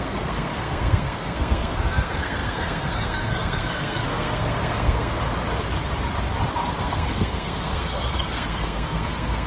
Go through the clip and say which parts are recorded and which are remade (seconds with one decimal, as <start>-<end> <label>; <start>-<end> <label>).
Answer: 0.0-5.2 remade; 5.2-6.8 recorded; 6.8-9.5 remade